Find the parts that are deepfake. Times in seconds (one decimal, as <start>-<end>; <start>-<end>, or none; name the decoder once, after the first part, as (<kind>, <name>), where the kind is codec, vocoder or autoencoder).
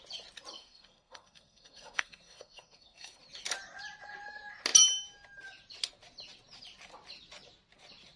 0.5-3.2 (codec, SNAC)